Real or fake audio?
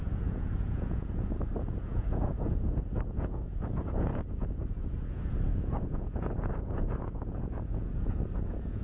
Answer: fake